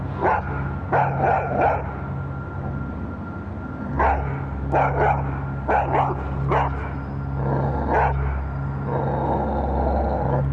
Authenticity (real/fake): real